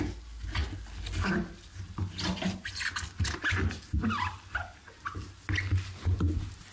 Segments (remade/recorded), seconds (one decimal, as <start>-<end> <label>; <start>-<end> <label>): 0.0-6.7 recorded